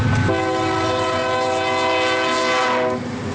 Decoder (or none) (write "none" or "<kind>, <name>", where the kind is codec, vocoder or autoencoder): none